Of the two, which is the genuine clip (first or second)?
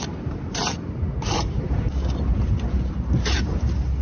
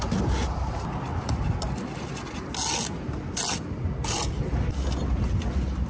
second